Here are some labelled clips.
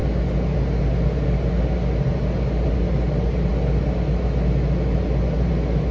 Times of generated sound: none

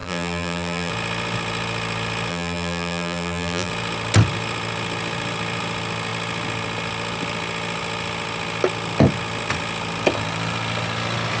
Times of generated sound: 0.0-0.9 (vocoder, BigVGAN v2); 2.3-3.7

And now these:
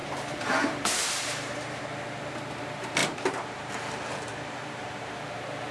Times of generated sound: 0.0-1.8 (vocoder, BigVGAN v2); 3.0-3.7; 4.3-5.1

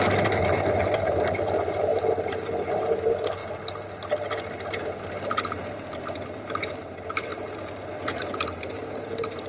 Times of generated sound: 0.0-3.4 (vocoder, BigVGAN v2); 5.0-7.3; 8.2-9.5

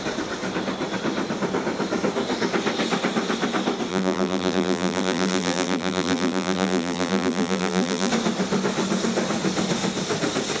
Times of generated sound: 3.9-8.1 (vocoder, BigVGAN v2)